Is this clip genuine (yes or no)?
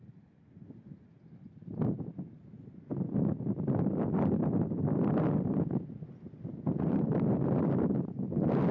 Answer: yes